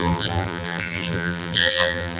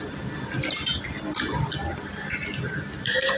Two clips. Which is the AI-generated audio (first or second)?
first